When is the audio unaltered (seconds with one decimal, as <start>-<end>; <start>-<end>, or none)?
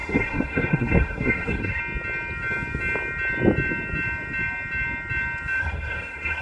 1.8-5.6